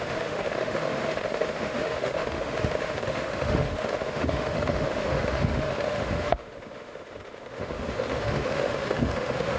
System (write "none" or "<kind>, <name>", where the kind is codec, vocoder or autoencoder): autoencoder, DAC-VAE